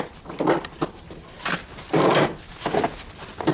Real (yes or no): yes